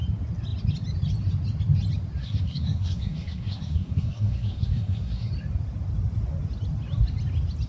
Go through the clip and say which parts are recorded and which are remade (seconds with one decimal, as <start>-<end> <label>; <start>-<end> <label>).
0.0-2.2 recorded; 2.2-5.3 remade; 5.3-7.7 recorded